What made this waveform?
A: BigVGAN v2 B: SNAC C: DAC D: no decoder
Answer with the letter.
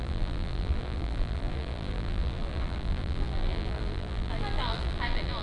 A